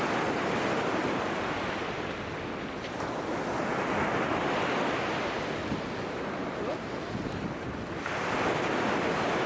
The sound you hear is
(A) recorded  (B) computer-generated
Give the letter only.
A